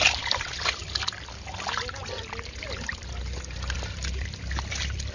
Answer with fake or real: fake